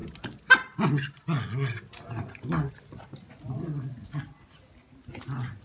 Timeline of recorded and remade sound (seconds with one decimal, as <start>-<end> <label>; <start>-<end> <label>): 0.0-5.6 recorded